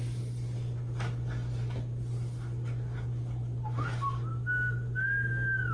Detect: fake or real real